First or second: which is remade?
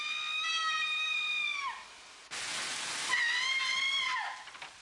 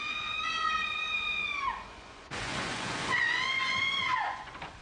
second